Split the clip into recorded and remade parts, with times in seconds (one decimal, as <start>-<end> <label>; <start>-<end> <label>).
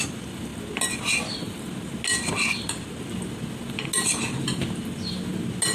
0.0-5.7 recorded